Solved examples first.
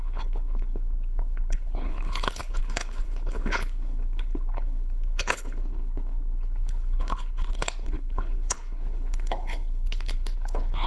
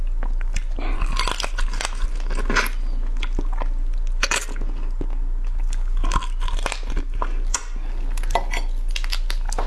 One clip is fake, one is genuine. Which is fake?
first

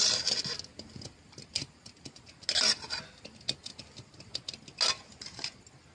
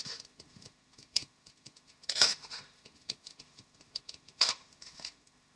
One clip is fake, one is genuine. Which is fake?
second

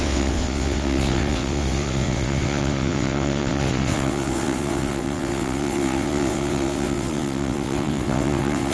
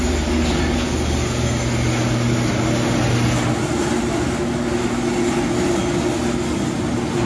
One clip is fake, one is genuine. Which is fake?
first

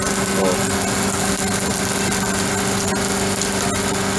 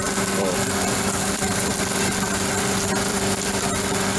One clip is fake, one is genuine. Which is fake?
second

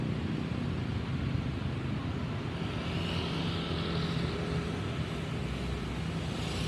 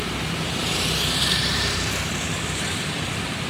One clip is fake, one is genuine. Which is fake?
second